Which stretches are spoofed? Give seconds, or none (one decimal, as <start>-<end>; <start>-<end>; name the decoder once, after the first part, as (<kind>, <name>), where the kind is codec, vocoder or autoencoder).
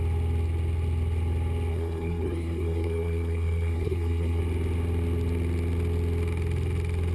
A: 1.7-4.4 (codec, SNAC)